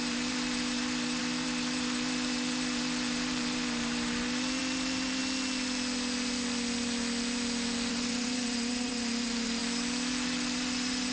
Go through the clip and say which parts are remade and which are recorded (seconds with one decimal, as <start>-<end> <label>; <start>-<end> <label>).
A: 0.0-5.2 remade; 5.2-7.9 recorded; 7.9-9.6 remade; 9.6-10.1 recorded; 10.1-11.1 remade